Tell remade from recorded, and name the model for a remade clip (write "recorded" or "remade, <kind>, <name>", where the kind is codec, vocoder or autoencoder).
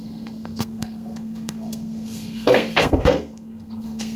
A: remade, codec, SNAC